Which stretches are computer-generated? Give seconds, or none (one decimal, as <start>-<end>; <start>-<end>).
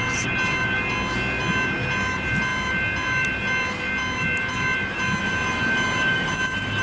none